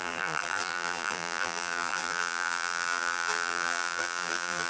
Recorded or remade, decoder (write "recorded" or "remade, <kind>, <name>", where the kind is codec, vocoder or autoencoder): remade, vocoder, BigVGAN v2